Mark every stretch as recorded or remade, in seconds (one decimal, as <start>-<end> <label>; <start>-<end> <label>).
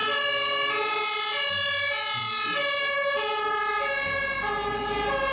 0.0-5.3 recorded